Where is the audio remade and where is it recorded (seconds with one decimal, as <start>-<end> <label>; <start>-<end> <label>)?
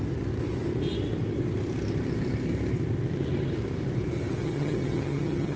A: 0.0-4.4 recorded; 4.4-5.6 remade